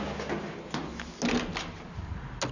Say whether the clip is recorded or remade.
recorded